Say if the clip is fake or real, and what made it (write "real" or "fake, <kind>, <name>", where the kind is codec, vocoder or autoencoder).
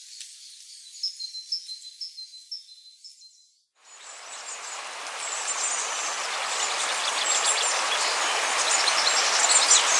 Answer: real